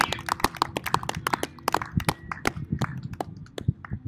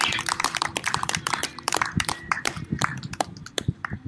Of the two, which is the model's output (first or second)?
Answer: second